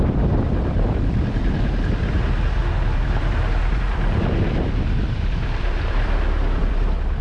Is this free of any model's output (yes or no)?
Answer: no